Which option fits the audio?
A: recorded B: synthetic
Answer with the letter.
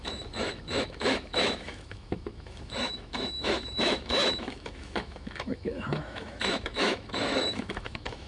B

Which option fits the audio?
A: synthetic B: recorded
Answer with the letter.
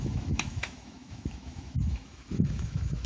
A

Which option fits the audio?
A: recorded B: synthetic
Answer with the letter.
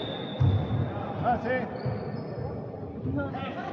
A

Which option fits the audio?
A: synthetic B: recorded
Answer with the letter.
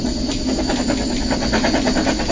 B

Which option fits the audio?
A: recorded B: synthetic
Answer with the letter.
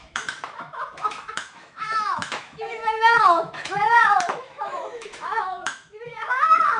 B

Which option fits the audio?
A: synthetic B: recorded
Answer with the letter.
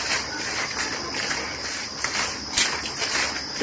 B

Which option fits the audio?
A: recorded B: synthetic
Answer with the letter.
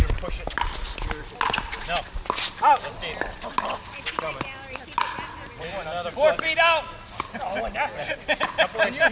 A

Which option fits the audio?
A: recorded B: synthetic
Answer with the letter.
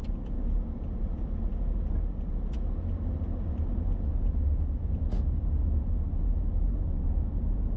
A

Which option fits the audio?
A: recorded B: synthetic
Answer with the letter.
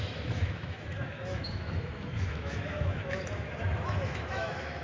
B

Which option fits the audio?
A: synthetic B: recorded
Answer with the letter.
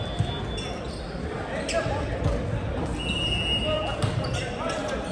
B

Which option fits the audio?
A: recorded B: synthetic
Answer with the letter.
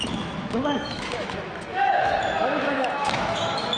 B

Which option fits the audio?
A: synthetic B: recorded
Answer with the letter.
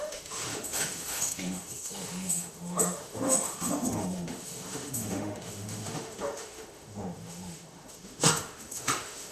A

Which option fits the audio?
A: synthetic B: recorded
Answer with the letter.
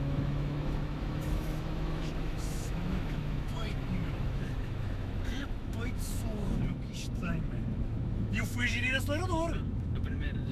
A